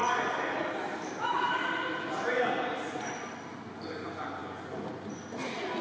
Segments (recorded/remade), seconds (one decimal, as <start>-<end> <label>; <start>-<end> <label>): 0.0-5.8 recorded